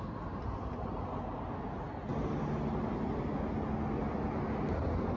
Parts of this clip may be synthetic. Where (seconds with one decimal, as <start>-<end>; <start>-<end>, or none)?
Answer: none